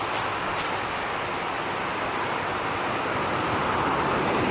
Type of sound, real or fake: real